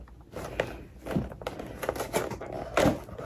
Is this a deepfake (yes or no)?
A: no